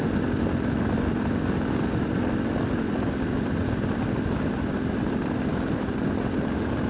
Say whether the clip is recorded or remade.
recorded